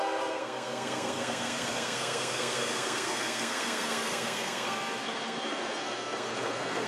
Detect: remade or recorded remade